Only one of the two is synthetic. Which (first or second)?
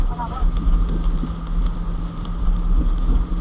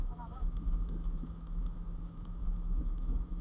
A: second